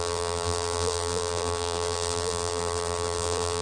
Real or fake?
fake